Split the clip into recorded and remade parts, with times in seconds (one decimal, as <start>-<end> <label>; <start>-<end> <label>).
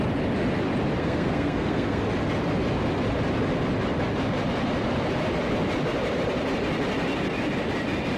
0.0-1.0 recorded; 1.0-2.0 remade; 2.0-8.2 recorded